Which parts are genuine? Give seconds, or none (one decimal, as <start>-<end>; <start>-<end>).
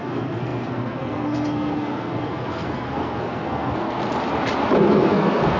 4.0-4.9